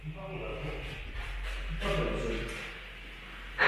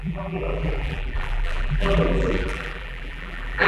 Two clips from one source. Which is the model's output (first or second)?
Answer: second